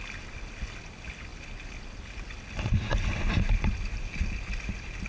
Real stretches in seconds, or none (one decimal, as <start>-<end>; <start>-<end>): 0.0-5.1